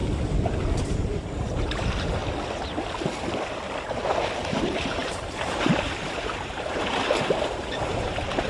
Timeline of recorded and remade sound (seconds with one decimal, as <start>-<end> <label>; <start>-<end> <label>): 0.0-0.8 recorded; 0.8-2.2 remade; 2.2-4.5 recorded; 4.5-8.5 remade